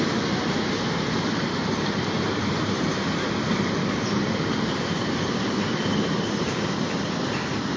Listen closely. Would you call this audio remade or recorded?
remade